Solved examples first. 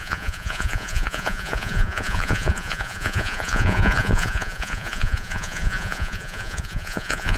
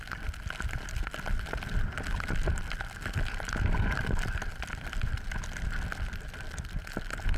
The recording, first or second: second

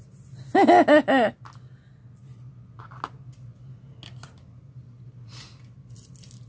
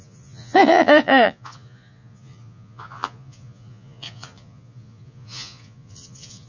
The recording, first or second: first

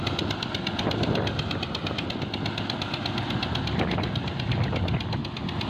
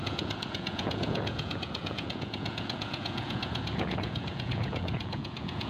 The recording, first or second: first